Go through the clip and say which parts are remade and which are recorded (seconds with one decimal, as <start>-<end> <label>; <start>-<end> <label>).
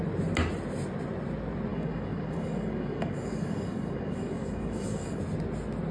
0.0-1.7 recorded; 1.7-5.2 remade; 5.2-5.9 recorded